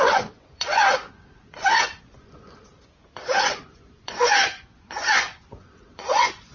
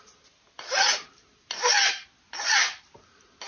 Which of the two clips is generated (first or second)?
first